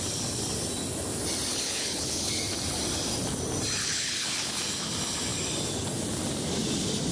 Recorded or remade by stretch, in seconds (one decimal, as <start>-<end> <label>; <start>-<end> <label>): 0.0-1.5 recorded; 1.5-2.3 remade; 2.3-3.8 recorded; 3.8-4.6 remade; 4.6-7.1 recorded